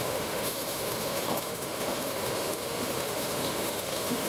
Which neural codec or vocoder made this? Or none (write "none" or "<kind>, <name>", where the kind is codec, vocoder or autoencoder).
autoencoder, DAC-VAE